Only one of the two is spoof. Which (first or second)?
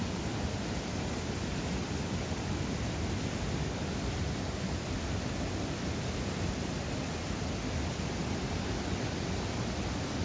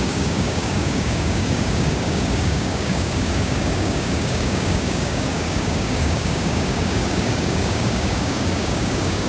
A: second